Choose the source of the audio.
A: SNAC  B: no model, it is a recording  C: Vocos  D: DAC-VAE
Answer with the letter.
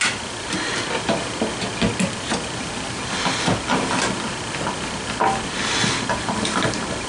B